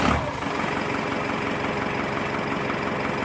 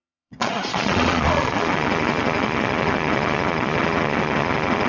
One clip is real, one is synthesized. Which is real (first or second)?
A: first